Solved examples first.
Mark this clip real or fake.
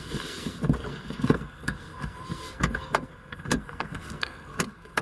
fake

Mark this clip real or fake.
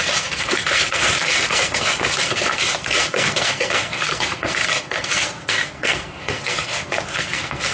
fake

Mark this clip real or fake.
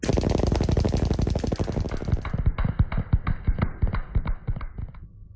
real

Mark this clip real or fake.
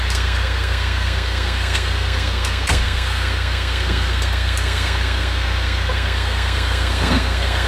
fake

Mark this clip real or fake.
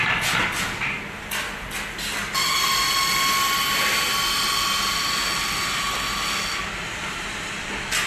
real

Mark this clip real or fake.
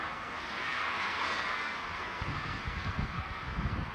fake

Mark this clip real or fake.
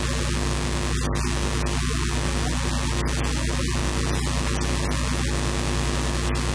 real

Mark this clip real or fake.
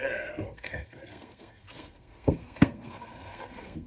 fake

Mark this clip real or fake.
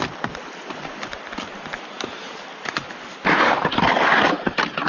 real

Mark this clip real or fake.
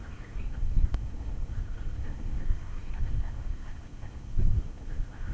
fake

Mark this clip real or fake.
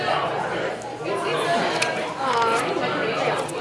real